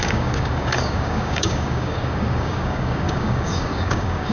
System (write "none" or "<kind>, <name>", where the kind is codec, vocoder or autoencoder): codec, DAC